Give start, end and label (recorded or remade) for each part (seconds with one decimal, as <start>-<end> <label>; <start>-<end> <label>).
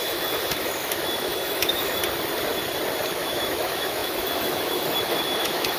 0.0-2.0 remade; 2.0-3.1 recorded; 3.1-5.8 remade